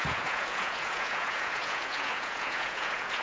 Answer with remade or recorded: remade